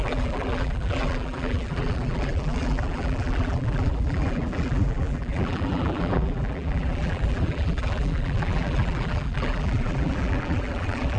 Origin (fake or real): fake